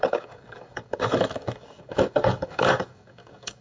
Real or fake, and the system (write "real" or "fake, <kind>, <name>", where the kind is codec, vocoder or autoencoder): fake, codec, DAC